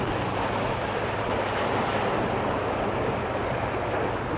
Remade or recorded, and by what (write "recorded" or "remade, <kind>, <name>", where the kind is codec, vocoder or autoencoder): recorded